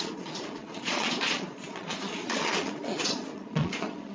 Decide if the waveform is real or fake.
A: fake